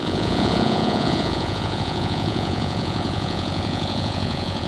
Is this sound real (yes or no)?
no